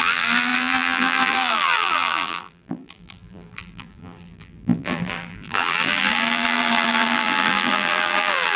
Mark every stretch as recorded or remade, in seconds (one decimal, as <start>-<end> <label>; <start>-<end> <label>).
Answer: 0.0-8.6 remade